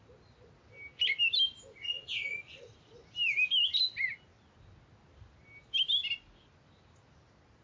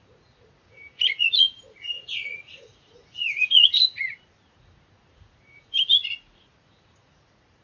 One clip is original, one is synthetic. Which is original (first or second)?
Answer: first